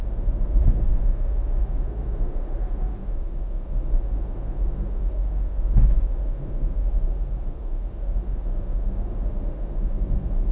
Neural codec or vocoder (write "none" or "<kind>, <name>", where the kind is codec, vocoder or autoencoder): autoencoder, DAC-VAE